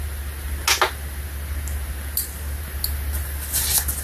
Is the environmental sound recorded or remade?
recorded